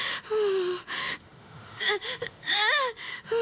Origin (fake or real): fake